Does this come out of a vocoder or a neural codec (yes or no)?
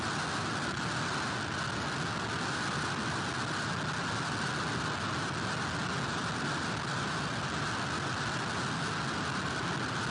no